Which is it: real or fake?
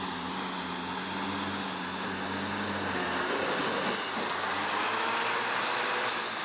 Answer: real